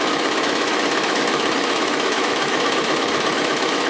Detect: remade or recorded remade